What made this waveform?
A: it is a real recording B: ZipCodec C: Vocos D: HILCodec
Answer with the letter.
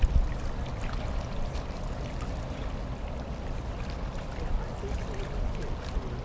A